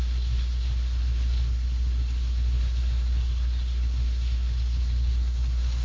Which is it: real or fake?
fake